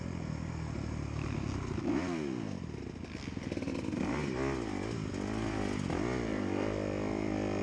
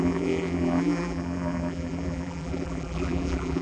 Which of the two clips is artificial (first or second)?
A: second